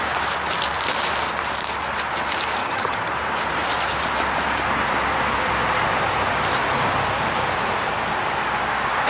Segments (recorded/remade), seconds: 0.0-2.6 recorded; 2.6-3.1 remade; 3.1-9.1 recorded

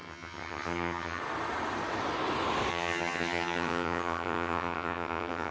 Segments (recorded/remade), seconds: 0.0-1.2 remade; 1.2-2.7 recorded; 2.7-5.5 remade

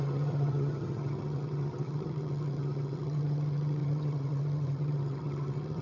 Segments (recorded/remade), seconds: 0.0-5.8 remade